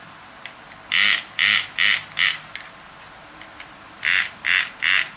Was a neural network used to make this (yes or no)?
no